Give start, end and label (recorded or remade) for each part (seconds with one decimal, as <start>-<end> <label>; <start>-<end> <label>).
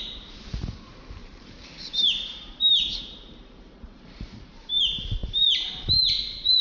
0.0-1.2 recorded; 1.2-4.8 remade; 4.8-6.6 recorded